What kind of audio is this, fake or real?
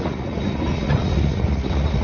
fake